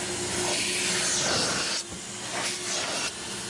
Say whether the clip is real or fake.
real